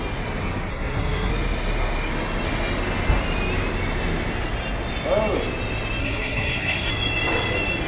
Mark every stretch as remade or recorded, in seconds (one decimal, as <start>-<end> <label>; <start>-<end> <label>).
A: 0.0-0.7 recorded; 0.7-1.3 remade; 1.3-6.0 recorded; 6.0-6.9 remade; 6.9-7.9 recorded